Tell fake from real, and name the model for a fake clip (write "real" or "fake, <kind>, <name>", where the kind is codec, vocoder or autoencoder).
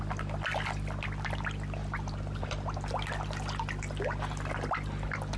real